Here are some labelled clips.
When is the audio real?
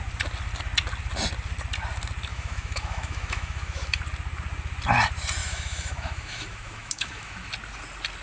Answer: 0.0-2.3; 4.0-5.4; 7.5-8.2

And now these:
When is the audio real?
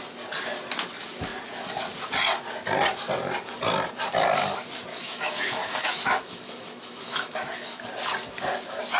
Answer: 0.0-4.9; 7.8-9.0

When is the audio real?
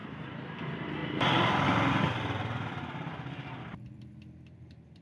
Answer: 0.0-0.6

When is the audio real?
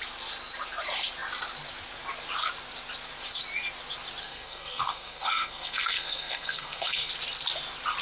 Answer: 0.0-4.2; 7.1-8.0